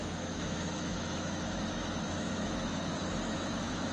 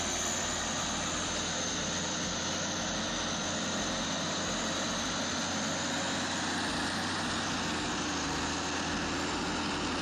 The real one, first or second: second